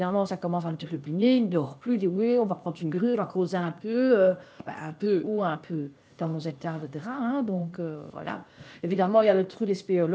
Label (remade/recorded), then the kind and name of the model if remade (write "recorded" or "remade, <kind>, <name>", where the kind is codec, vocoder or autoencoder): remade, codec, ZipCodec